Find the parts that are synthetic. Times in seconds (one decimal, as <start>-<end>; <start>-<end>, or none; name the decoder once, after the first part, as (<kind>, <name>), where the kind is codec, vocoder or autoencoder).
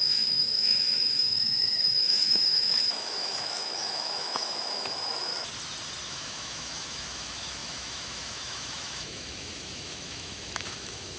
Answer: 0.0-5.3 (autoencoder, DAC-VAE); 6.1-11.2